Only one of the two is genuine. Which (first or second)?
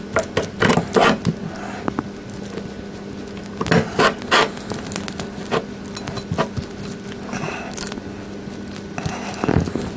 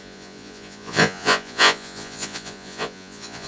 first